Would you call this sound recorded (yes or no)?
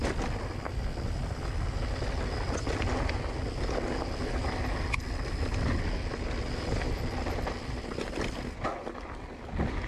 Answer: yes